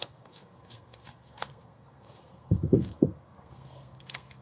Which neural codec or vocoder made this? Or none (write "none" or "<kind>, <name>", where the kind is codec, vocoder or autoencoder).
codec, SNAC